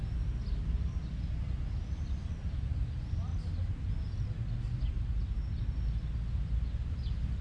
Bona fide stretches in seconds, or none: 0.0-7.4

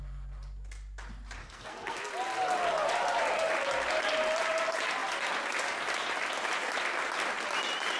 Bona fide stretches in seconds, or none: 0.0-1.4; 2.0-8.0